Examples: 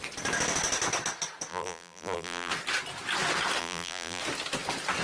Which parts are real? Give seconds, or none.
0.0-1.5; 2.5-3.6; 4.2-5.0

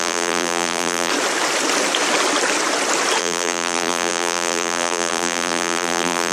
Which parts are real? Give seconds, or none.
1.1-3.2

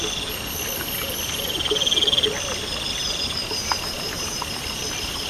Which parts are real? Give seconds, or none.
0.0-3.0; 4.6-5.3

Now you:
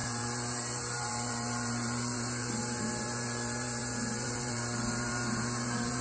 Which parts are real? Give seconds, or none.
none

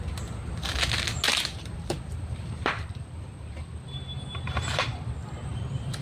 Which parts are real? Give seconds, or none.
0.0-1.5; 5.1-5.5

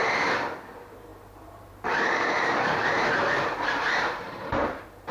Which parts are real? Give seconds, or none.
0.0-0.7